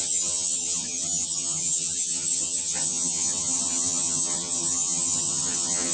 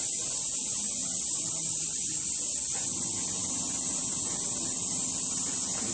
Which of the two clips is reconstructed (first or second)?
first